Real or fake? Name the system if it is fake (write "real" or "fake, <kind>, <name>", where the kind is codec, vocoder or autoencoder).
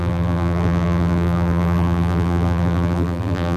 fake, vocoder, BigVGAN v2